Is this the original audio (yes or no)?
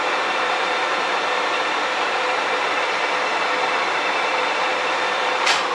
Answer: no